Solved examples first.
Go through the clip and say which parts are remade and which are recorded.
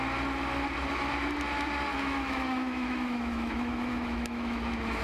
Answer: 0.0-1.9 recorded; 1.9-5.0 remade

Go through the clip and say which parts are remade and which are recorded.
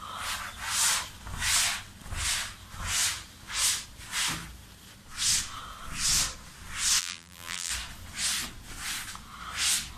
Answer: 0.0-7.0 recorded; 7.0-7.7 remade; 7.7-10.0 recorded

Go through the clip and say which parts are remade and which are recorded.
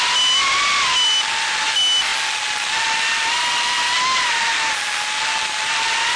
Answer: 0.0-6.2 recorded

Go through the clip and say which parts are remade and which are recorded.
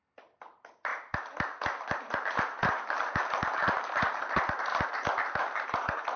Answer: 0.0-0.9 remade; 0.9-2.0 recorded; 2.0-4.7 remade; 4.7-5.4 recorded; 5.4-6.2 remade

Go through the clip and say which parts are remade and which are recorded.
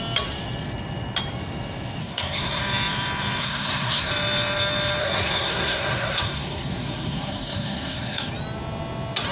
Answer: 0.0-2.0 recorded; 2.0-2.6 remade; 2.6-3.4 recorded; 3.4-4.1 remade; 4.1-5.0 recorded; 5.0-8.3 remade; 8.3-9.3 recorded